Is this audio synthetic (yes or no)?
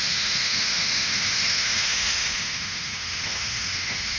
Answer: yes